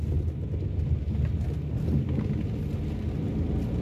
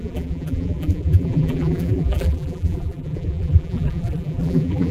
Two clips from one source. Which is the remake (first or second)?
second